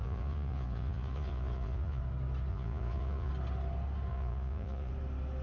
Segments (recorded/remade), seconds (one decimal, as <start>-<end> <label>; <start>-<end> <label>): 0.0-2.0 remade; 2.0-2.5 recorded; 2.5-3.3 remade; 3.3-4.1 recorded; 4.1-4.9 remade; 4.9-5.4 recorded